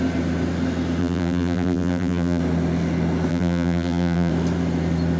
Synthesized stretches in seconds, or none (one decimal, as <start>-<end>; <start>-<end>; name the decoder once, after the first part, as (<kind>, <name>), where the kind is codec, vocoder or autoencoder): 1.0-2.4 (vocoder, BigVGAN v2); 3.3-4.3

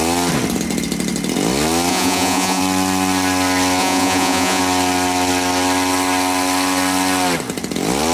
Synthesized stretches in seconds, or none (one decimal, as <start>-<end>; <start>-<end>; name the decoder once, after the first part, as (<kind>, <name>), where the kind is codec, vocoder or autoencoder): 1.9-2.6 (vocoder, Vocos); 3.8-4.6